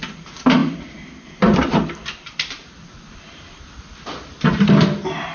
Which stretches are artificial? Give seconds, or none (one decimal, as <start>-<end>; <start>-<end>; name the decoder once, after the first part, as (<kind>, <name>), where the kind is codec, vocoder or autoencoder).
0.6-3.8 (vocoder, BigVGAN v2)